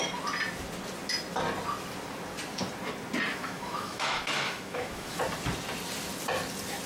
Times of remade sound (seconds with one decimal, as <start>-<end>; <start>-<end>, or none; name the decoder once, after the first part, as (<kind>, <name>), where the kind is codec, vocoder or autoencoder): 3.3-5.2 (autoencoder, DAC-VAE)